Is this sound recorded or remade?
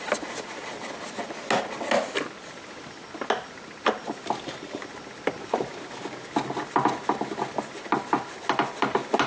recorded